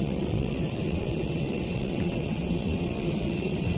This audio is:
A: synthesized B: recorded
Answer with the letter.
A